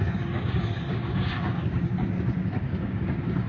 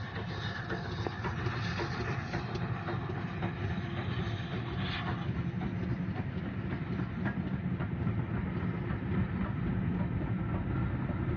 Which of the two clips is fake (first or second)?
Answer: first